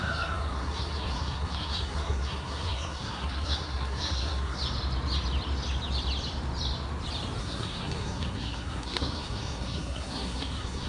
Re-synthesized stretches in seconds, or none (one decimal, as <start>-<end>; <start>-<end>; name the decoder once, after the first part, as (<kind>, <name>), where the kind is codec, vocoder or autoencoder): 0.0-4.6 (codec, SNAC); 7.4-10.9